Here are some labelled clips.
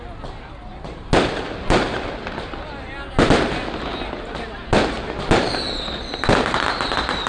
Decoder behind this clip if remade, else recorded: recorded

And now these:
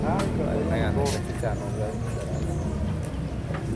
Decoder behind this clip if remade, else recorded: recorded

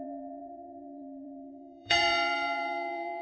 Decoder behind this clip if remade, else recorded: remade, vocoder, Vocos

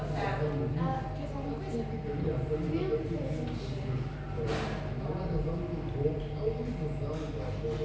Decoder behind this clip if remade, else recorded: recorded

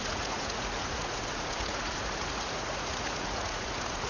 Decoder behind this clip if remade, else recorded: remade, vocoder, Vocos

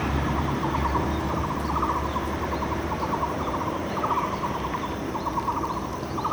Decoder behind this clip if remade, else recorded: remade, vocoder, BigVGAN v2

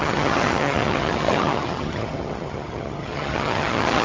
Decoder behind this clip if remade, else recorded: remade, vocoder, HiFi-GAN